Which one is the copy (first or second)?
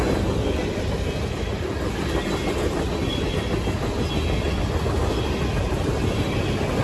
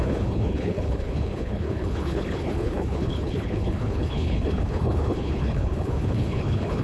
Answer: second